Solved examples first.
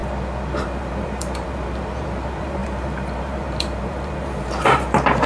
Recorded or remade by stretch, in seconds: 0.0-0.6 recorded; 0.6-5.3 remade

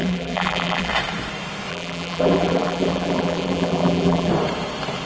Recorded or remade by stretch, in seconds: 0.0-0.9 remade; 0.9-1.7 recorded; 1.7-4.3 remade; 4.3-5.1 recorded

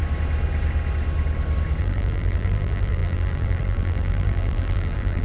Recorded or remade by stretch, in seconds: 0.0-1.8 recorded; 1.8-5.2 remade